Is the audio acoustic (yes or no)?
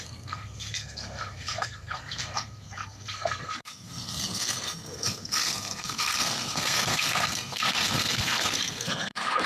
no